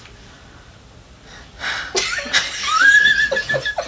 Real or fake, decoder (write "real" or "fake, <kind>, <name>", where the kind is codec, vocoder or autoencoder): real